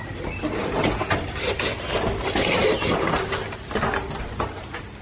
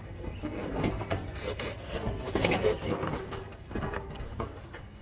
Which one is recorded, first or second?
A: first